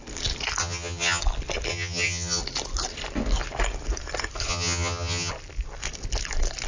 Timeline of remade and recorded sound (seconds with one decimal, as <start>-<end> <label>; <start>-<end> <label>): 0.0-0.6 recorded; 0.6-1.2 remade; 1.2-1.7 recorded; 1.7-2.4 remade; 2.4-4.5 recorded; 4.5-5.3 remade; 5.3-6.7 recorded